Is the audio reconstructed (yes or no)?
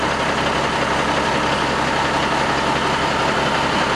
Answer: no